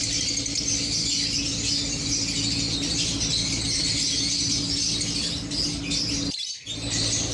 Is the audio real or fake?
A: real